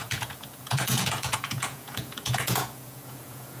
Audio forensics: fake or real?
fake